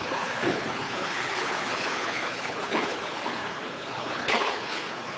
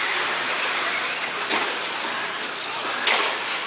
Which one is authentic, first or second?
second